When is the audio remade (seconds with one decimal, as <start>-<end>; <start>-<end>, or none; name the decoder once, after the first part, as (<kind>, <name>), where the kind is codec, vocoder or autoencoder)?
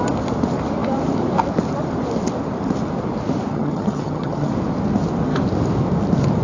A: 3.5-4.5 (vocoder, HiFi-GAN)